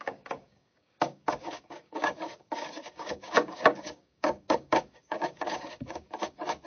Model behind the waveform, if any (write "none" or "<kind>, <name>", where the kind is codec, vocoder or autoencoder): codec, DAC